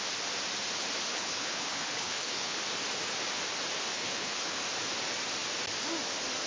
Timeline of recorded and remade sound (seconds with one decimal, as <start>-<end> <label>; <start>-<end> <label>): 0.0-1.1 recorded; 1.1-2.6 remade; 2.6-3.9 recorded; 3.9-4.6 remade; 4.6-6.5 recorded